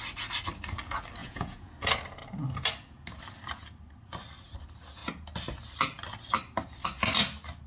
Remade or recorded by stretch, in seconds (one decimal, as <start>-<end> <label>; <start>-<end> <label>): 0.0-1.2 recorded; 1.2-1.7 remade; 1.7-7.7 recorded